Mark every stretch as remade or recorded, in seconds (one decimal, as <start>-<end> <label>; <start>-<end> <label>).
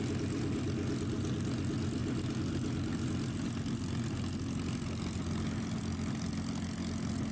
0.0-7.3 recorded